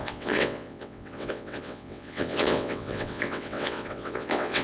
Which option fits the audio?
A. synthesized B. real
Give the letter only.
A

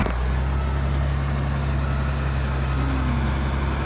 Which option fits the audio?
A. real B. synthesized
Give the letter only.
A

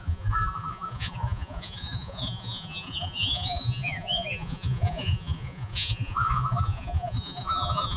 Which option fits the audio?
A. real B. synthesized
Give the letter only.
B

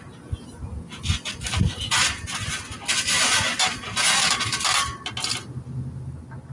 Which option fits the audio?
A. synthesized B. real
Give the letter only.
B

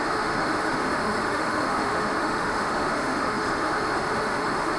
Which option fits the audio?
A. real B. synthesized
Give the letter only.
B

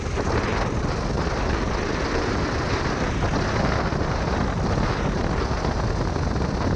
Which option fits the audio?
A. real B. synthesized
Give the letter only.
A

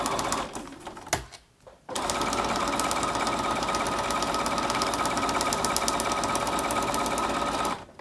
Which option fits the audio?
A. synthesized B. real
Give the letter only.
B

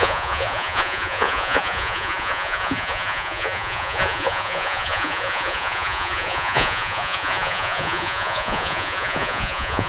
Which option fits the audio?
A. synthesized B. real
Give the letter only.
A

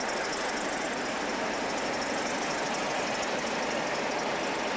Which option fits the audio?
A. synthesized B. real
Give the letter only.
B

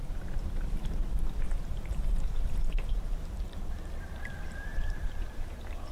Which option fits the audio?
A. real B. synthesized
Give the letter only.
B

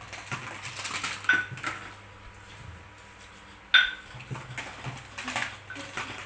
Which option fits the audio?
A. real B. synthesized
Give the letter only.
A